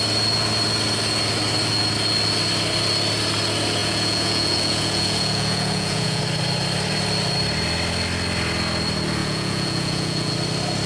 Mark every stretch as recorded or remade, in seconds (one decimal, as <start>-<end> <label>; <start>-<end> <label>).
0.0-3.8 recorded; 3.8-6.2 remade; 6.2-9.2 recorded; 9.2-10.3 remade; 10.3-10.9 recorded